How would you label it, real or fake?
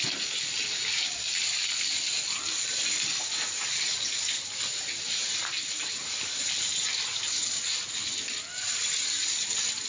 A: fake